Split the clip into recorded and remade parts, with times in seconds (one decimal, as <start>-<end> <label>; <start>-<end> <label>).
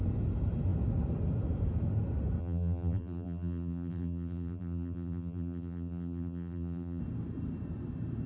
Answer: 0.0-2.4 recorded; 2.4-7.0 remade; 7.0-8.3 recorded